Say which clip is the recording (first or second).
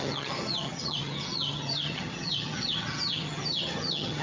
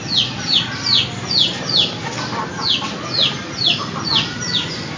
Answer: second